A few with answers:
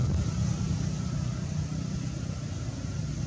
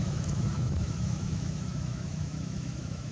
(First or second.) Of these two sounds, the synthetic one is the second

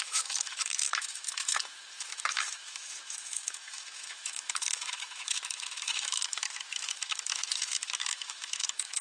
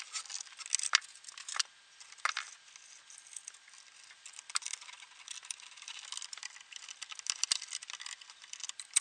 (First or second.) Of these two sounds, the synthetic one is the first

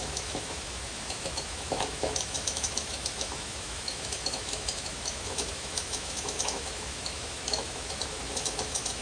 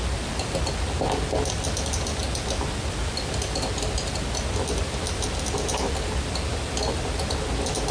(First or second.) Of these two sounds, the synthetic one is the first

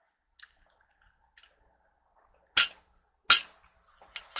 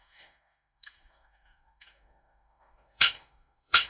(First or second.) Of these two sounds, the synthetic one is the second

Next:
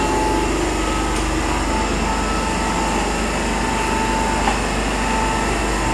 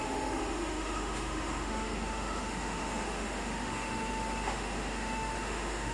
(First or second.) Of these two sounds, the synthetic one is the second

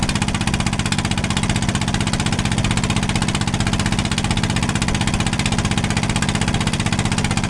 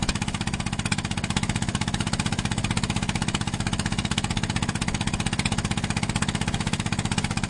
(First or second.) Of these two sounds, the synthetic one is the second